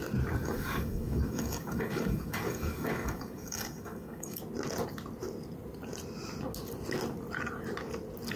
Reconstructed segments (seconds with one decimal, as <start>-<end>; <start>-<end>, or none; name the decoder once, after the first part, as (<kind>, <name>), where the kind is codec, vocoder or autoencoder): 0.4-4.4 (codec, DAC)